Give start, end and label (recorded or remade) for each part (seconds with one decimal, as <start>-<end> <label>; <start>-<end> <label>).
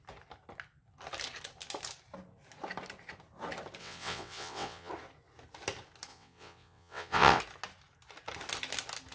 0.0-3.8 recorded; 3.8-4.9 remade; 4.9-6.1 recorded; 6.1-7.4 remade; 7.4-9.1 recorded